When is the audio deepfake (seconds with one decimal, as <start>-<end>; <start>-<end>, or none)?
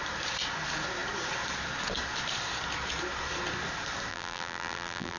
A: 4.1-5.2